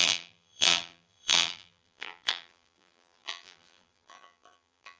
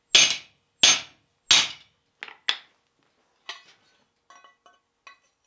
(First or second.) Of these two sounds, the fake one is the first